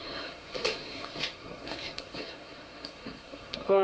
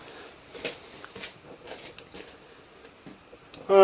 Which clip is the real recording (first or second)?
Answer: second